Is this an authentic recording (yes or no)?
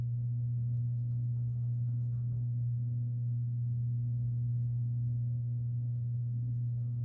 no